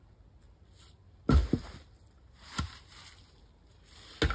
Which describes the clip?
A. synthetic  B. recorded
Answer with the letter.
B